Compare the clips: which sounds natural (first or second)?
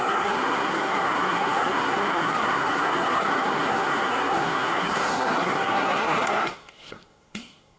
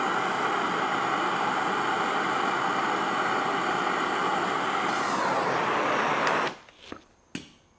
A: second